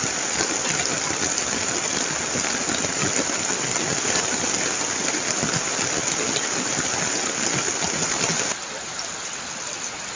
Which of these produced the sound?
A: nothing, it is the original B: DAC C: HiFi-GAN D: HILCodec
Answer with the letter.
A